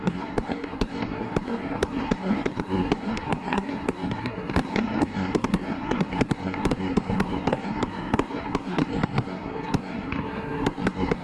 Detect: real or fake fake